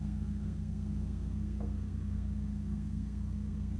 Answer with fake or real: fake